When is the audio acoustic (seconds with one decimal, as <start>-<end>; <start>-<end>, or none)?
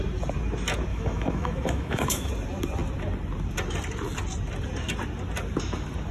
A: 0.0-0.9; 2.3-6.1